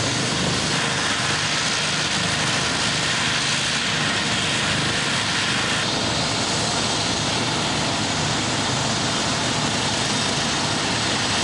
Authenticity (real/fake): real